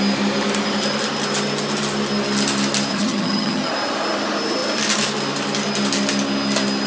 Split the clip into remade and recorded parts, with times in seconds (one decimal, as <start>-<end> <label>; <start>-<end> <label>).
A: 0.0-2.9 recorded; 2.9-3.7 remade; 3.7-6.9 recorded